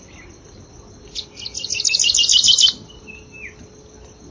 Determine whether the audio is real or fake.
real